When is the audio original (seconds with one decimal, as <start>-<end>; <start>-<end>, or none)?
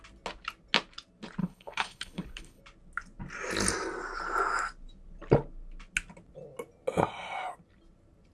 0.0-1.4; 2.6-8.3